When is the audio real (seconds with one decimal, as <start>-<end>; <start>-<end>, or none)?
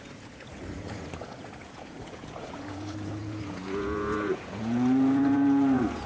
none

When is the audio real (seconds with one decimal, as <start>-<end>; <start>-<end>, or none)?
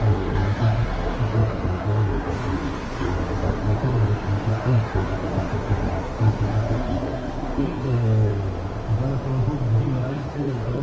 3.9-4.5; 8.3-10.1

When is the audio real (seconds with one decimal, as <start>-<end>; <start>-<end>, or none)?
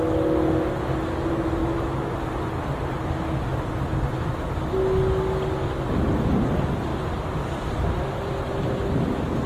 0.0-1.6; 2.2-9.5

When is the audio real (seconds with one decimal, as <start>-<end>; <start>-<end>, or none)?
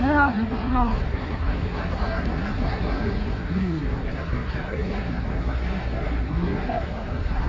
none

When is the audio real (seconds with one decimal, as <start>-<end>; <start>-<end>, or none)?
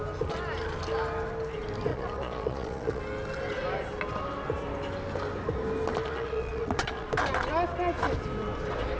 0.0-1.9; 3.0-6.0; 7.1-9.0